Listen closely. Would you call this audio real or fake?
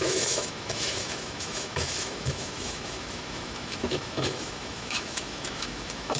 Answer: fake